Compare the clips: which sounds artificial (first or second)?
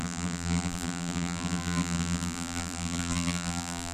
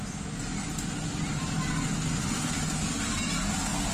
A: first